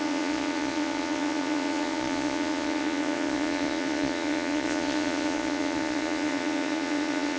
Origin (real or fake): fake